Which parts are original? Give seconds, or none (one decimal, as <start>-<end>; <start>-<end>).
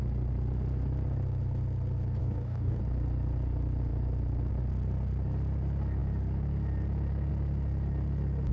0.0-2.2; 2.8-8.5